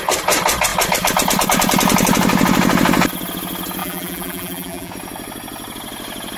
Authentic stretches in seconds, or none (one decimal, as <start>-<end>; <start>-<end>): 0.0-3.8; 4.9-6.4